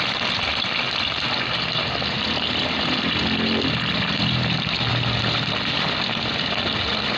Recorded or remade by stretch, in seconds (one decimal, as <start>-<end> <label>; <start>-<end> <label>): 0.0-7.2 recorded